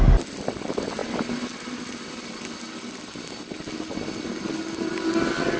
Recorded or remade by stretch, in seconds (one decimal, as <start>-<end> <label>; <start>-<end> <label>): 0.0-5.6 recorded